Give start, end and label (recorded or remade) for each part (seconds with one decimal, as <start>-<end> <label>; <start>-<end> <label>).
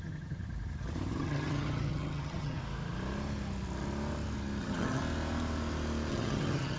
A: 0.0-0.4 remade; 0.4-1.2 recorded; 1.2-2.6 remade; 2.6-4.6 recorded; 4.6-5.0 remade; 5.0-6.1 recorded; 6.1-6.8 remade